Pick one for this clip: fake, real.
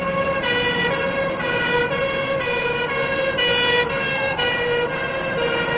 fake